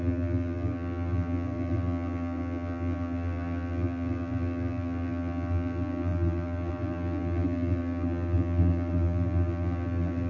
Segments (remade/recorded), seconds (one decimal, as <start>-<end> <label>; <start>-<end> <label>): 0.0-10.3 remade